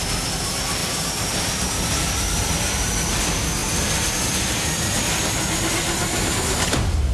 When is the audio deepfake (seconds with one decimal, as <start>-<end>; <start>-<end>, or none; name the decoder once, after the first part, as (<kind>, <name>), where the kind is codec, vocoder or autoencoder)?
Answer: none